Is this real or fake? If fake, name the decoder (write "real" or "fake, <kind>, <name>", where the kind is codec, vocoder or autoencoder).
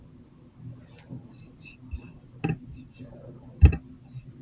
real